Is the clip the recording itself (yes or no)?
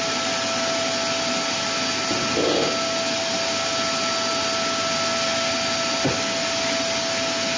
yes